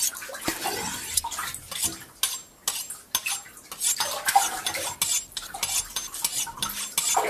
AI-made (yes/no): no